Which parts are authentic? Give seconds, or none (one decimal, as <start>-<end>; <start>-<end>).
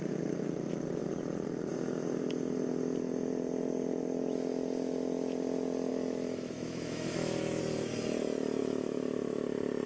0.0-5.9; 7.6-8.6; 9.4-9.9